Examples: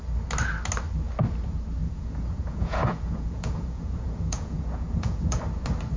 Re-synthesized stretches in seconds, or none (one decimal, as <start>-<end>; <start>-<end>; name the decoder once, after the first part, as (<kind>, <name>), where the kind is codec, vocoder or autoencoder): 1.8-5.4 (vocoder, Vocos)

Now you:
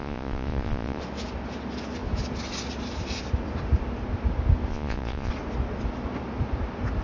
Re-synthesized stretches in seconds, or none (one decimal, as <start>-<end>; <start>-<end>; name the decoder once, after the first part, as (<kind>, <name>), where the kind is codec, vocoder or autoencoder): 0.0-1.0 (vocoder, Vocos); 4.7-5.3

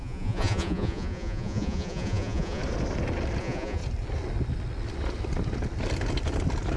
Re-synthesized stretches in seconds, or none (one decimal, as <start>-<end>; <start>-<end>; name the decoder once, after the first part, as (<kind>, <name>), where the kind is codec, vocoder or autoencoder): 0.0-2.6 (vocoder, Vocos); 3.4-3.8